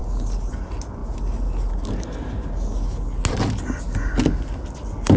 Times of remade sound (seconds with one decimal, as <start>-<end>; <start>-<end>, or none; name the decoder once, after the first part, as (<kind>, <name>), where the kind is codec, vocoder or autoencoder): none